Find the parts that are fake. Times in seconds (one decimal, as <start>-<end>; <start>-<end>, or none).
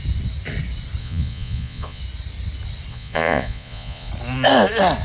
1.0-2.0; 2.9-4.1